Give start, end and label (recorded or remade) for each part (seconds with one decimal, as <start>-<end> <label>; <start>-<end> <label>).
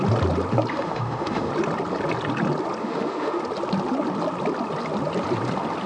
0.0-0.7 recorded; 0.7-1.5 remade; 1.5-2.8 recorded; 2.8-3.4 remade; 3.4-5.9 recorded